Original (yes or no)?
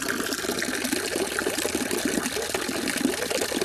yes